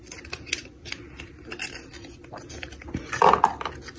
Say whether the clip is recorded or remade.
recorded